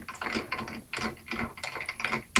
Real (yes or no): yes